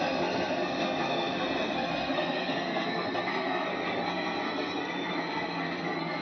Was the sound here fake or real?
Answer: fake